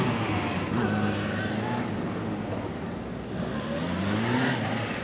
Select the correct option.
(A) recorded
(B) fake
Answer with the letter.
A